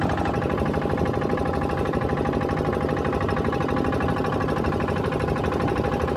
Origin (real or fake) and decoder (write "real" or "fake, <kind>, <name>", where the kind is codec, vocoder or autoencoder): real